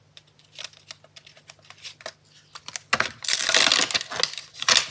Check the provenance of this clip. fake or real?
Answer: real